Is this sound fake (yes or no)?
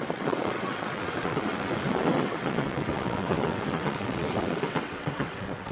yes